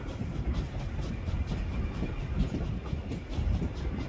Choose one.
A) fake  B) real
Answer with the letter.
B